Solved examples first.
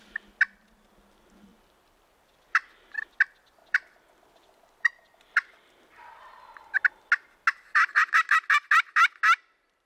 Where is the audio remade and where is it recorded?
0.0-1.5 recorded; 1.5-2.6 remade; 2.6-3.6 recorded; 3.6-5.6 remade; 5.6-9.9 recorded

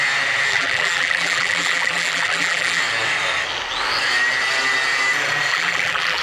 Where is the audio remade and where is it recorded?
0.0-0.5 recorded; 0.5-2.8 remade; 2.8-5.5 recorded; 5.5-6.2 remade

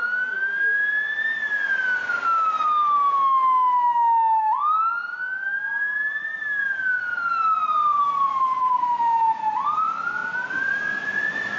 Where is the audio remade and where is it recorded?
0.0-7.1 recorded; 7.1-8.3 remade; 8.3-10.2 recorded; 10.2-10.8 remade; 10.8-11.6 recorded